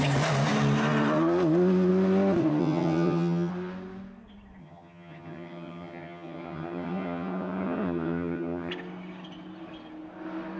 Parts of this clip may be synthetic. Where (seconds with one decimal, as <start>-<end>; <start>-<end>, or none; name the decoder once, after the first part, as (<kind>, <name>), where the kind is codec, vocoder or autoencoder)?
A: 2.6-3.5 (vocoder, HiFi-GAN); 4.6-8.7